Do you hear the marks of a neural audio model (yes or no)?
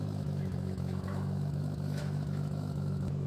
yes